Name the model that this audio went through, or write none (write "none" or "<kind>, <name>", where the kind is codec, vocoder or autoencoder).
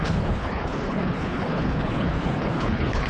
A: codec, HILCodec